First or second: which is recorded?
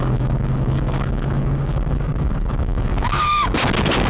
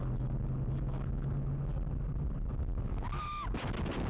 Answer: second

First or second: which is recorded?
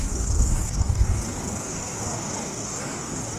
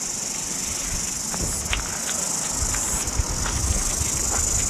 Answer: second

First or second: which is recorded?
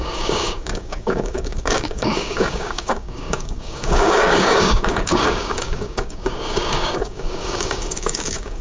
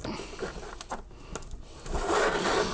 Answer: second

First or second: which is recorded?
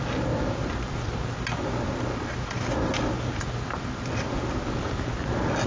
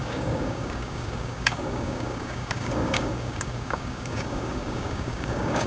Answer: first